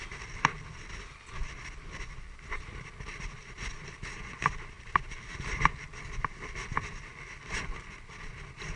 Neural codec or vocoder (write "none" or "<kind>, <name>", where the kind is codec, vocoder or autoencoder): none